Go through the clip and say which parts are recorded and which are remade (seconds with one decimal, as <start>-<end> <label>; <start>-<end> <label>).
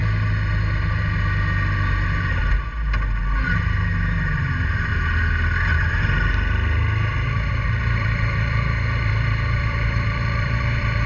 0.0-3.6 recorded; 3.6-4.9 remade; 4.9-7.5 recorded; 7.5-11.1 remade